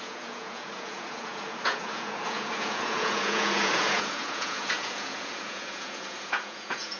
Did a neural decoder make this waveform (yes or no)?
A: yes